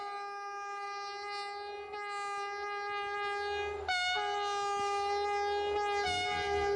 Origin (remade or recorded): recorded